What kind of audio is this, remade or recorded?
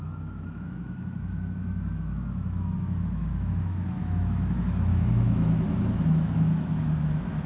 remade